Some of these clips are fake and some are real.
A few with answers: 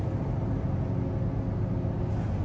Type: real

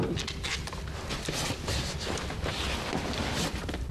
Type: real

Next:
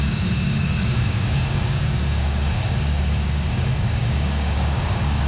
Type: fake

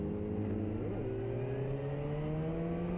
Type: real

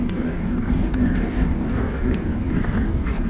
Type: fake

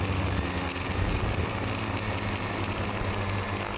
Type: real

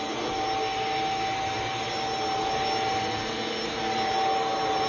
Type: real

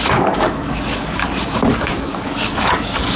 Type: fake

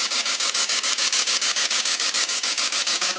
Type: fake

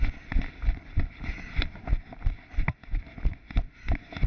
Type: real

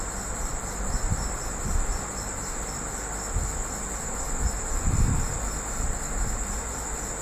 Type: real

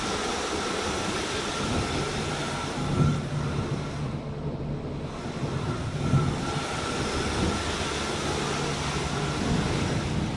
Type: real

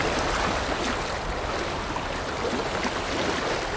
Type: real